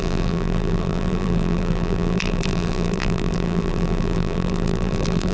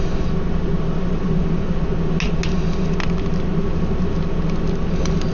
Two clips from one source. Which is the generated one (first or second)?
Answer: first